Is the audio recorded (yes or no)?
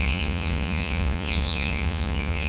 no